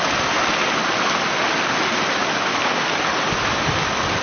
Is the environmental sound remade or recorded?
recorded